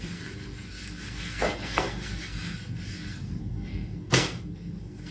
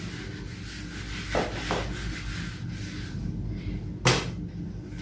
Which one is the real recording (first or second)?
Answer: second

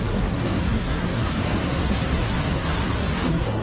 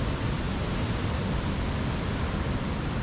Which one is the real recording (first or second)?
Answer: second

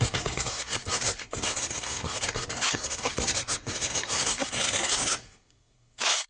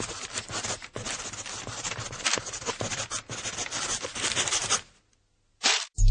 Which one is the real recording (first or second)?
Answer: second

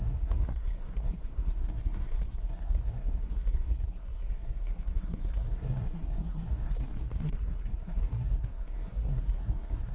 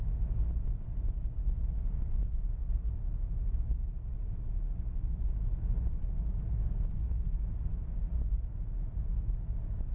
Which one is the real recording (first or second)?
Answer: second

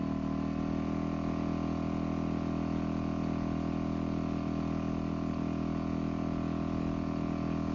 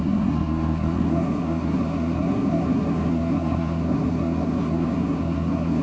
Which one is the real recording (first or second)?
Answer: first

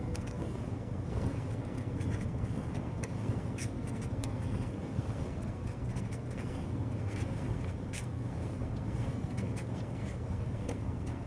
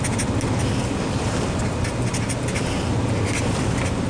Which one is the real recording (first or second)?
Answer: second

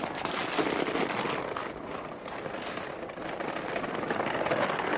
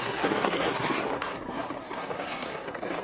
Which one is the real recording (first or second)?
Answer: first